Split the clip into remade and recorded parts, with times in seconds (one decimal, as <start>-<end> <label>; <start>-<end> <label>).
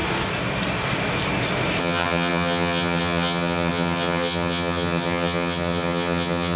0.0-1.8 recorded; 1.8-6.6 remade